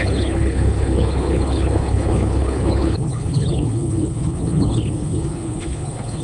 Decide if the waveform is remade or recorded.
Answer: remade